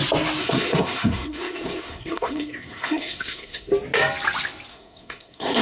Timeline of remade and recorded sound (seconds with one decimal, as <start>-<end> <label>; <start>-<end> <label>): 0.0-0.4 recorded; 0.4-3.7 remade; 3.7-4.7 recorded; 4.7-5.6 remade